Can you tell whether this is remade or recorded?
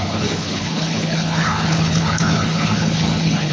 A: remade